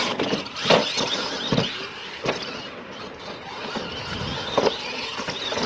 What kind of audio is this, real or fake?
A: real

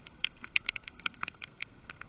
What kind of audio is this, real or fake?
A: fake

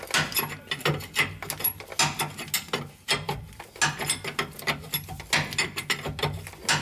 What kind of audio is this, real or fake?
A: real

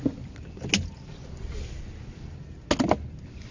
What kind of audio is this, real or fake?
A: real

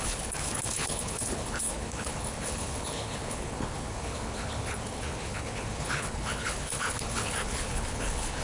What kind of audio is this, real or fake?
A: fake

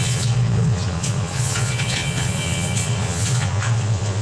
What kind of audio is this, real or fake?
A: fake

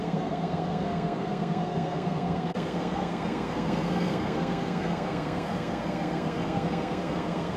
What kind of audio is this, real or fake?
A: fake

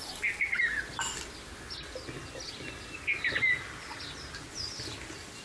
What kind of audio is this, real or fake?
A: real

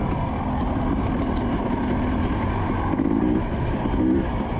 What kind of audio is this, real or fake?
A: real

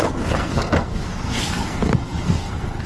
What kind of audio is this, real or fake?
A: fake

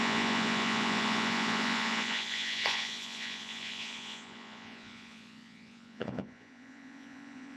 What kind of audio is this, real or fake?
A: fake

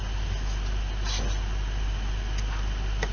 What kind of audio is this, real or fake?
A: real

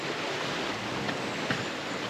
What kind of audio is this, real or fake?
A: real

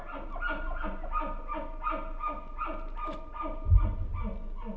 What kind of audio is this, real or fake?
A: real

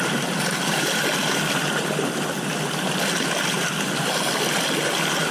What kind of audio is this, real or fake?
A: real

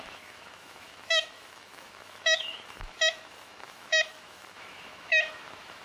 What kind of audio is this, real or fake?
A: fake